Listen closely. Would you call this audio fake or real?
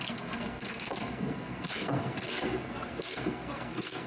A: fake